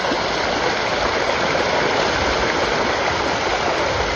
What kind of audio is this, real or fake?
real